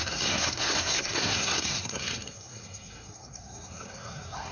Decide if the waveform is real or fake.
fake